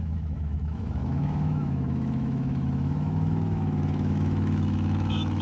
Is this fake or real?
fake